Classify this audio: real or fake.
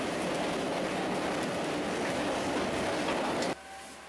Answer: real